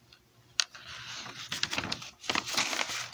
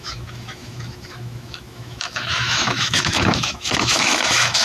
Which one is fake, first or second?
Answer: second